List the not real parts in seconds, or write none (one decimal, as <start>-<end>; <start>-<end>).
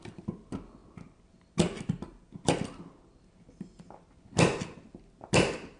none